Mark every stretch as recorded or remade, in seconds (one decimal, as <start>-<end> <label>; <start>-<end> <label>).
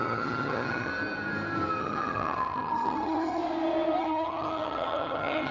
0.0-0.9 remade; 0.9-1.8 recorded; 1.8-3.4 remade; 3.4-4.0 recorded; 4.0-5.5 remade